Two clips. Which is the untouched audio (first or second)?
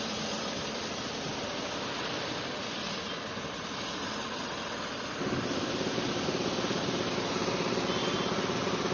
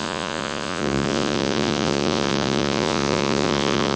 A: first